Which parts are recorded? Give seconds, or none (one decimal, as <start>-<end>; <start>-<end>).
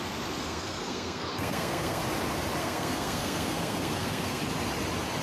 0.0-0.4; 2.0-2.6; 4.4-5.2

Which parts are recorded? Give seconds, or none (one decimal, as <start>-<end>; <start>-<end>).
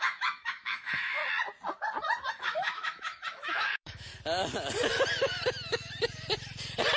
1.2-2.3; 4.1-7.0